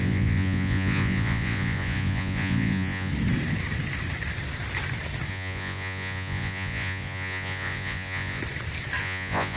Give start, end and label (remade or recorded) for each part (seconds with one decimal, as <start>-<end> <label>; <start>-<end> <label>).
0.0-3.1 remade; 3.1-5.3 recorded; 5.3-8.4 remade; 8.4-9.0 recorded; 9.0-9.6 remade